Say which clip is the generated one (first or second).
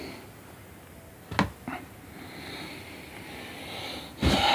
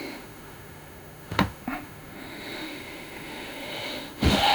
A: second